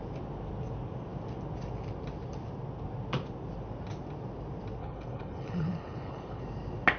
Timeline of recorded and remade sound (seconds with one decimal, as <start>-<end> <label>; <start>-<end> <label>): 0.0-4.8 recorded; 4.8-6.4 remade; 6.4-7.0 recorded

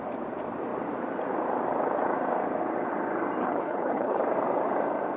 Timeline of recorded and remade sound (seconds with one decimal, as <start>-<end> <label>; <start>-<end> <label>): 0.0-3.4 recorded; 3.4-4.2 remade; 4.2-5.2 recorded

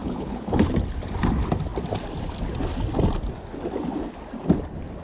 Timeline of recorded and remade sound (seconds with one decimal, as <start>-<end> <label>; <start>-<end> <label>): 0.0-0.5 remade; 0.5-5.0 recorded

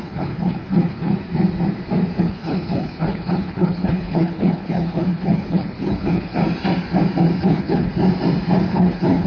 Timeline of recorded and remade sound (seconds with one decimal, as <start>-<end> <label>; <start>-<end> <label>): 0.0-1.1 remade; 1.1-2.2 recorded; 2.2-6.4 remade; 6.4-7.4 recorded; 7.4-7.9 remade; 7.9-8.7 recorded; 8.7-9.3 remade

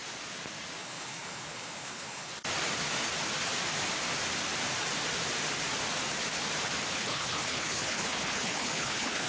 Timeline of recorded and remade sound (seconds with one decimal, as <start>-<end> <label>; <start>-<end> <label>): 0.0-0.8 recorded; 0.8-2.3 remade; 2.3-6.9 recorded; 6.9-9.3 remade

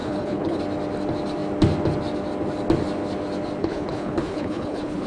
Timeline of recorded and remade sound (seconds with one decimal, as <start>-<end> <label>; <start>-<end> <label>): 0.0-0.6 remade; 0.6-3.6 recorded; 3.6-5.1 remade

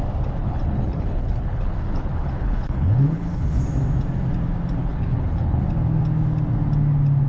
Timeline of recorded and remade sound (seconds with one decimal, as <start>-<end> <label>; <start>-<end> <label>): 0.0-0.4 recorded; 0.4-3.6 remade; 3.6-4.8 recorded; 4.8-5.6 remade; 5.6-7.3 recorded